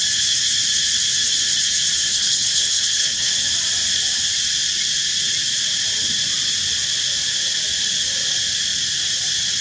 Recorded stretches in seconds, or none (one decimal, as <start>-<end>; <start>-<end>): 0.0-2.1; 3.3-9.6